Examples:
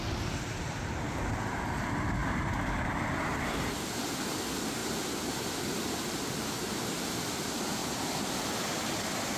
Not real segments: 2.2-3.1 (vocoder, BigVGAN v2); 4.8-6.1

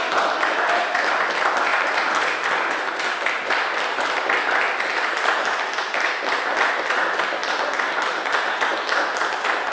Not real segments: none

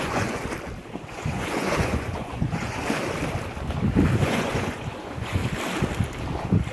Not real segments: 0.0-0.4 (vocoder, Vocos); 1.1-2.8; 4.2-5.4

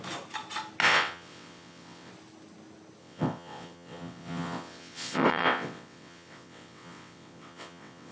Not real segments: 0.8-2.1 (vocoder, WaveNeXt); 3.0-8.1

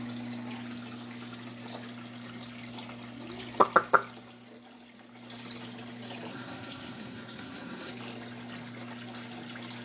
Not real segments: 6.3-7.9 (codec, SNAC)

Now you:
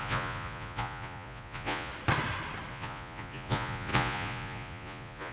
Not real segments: 0.0-1.9 (vocoder, Vocos); 2.7-5.3